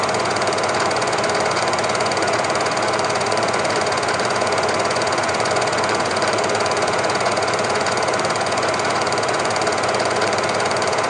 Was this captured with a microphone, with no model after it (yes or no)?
no